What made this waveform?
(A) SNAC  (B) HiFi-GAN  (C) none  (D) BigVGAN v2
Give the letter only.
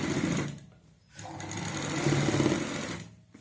C